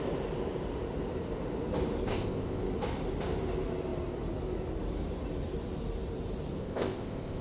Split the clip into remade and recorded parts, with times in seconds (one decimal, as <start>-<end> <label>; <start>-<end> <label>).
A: 0.0-2.1 recorded; 2.1-2.6 remade; 2.6-6.6 recorded; 6.6-7.4 remade